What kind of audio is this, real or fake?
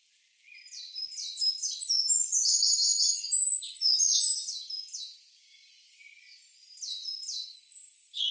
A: real